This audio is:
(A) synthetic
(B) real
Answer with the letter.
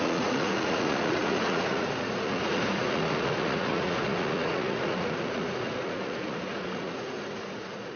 A